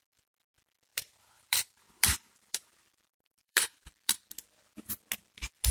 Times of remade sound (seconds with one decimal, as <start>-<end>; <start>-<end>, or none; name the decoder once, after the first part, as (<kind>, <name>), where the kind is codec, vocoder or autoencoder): 0.9-4.3 (vocoder, BigVGAN v2)